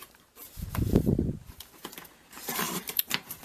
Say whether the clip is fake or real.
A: fake